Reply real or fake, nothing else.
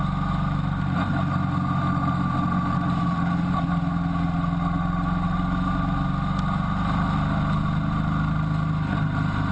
real